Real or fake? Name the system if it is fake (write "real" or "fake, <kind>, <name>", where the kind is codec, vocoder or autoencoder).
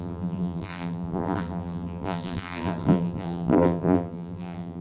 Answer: fake, vocoder, BigVGAN v2